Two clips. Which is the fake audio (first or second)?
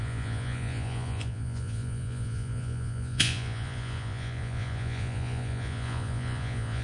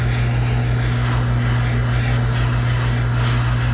first